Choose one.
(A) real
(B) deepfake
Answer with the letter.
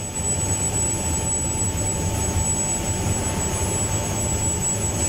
A